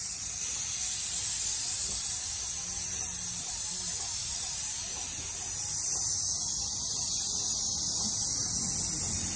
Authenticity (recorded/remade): recorded